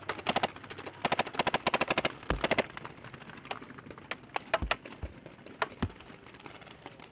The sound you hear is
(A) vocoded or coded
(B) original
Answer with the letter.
B